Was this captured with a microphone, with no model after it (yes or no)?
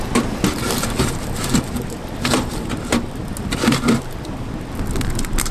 yes